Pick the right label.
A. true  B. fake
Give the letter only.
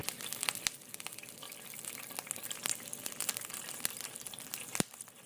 A